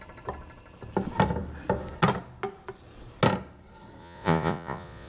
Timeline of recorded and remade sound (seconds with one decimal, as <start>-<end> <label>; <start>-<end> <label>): 0.0-4.0 recorded; 4.0-5.1 remade